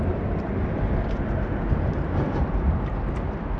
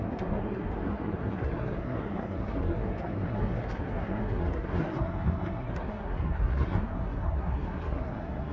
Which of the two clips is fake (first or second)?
second